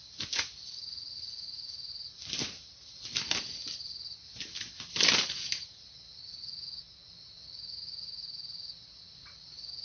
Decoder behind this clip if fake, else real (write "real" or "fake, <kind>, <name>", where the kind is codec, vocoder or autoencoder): real